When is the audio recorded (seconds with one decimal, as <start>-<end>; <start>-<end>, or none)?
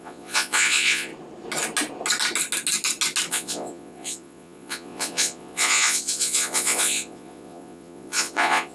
1.1-3.3